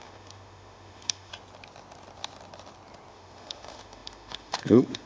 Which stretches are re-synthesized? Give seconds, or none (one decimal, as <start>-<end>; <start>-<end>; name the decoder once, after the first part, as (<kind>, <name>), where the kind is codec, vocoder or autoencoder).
0.0-1.3 (autoencoder, DAC-VAE); 3.1-5.1